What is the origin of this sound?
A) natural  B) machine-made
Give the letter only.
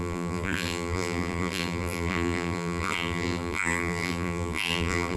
B